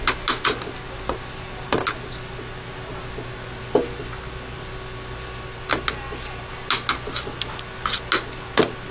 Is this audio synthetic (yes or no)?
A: no